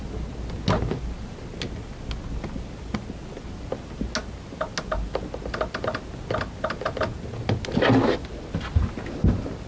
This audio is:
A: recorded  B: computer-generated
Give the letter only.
A